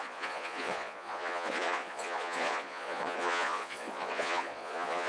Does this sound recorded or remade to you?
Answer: remade